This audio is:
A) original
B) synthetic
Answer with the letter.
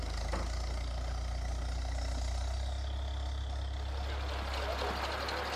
A